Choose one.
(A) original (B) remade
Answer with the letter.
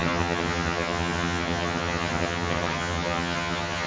B